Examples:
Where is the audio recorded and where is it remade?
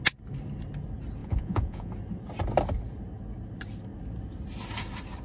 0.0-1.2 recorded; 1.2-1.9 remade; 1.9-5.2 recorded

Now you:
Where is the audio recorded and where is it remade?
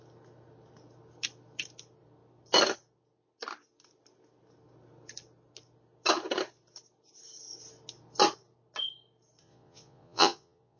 0.0-9.4 recorded; 9.4-10.8 remade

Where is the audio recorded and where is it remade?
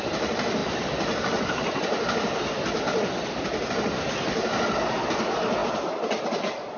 0.0-6.8 recorded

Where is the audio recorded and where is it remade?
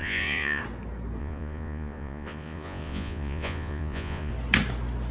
0.0-0.6 remade; 0.6-1.2 recorded; 1.2-4.3 remade; 4.3-5.1 recorded